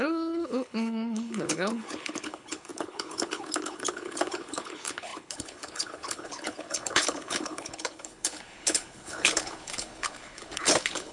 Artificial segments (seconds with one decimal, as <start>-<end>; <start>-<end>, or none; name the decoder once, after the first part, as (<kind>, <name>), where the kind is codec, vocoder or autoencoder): 0.0-11.1 (codec, HILCodec)